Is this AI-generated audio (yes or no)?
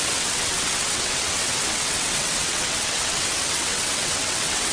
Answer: yes